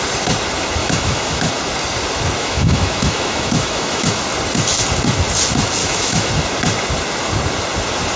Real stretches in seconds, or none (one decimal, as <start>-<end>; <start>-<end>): 0.0-0.8; 1.5-2.4; 4.2-5.8; 6.3-8.2